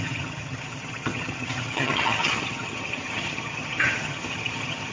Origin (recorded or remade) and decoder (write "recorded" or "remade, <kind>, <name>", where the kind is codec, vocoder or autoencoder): remade, vocoder, HiFi-GAN